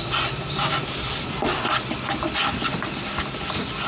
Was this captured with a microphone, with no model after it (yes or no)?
yes